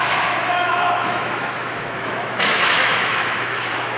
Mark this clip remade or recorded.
remade